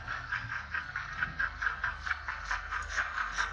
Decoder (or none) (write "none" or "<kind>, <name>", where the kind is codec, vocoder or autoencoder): codec, SNAC